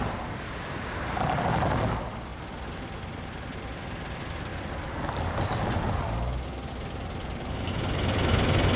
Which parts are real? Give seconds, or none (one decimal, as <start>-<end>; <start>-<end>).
0.0-8.8